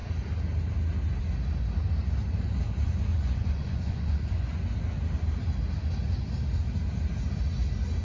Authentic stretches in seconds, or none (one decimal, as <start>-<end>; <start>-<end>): 0.0-3.1; 4.6-8.0